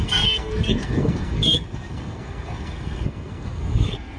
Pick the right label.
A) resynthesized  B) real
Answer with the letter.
A